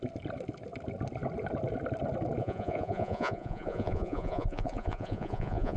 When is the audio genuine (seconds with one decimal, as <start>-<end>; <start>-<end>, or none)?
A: 0.0-2.4